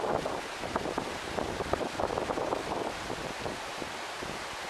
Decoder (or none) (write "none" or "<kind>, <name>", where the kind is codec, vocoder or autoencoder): vocoder, BigVGAN v2